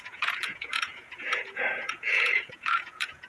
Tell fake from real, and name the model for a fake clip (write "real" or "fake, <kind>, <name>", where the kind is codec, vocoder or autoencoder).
fake, vocoder, Vocos